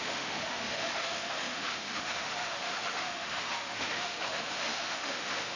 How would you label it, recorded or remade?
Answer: remade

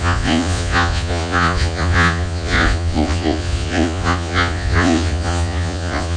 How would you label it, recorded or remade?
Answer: remade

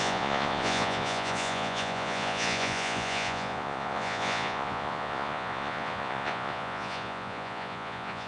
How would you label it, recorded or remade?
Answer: remade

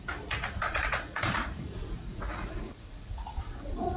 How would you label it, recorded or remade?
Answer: remade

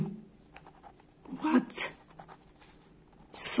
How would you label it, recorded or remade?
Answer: recorded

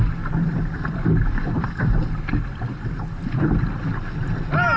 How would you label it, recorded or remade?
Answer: recorded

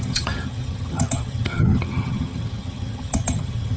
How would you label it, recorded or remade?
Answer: remade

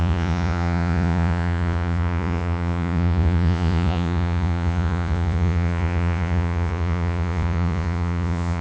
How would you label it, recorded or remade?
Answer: remade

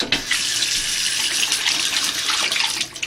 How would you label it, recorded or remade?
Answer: recorded